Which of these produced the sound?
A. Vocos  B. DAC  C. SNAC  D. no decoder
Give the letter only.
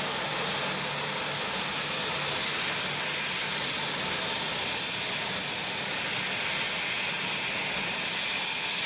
D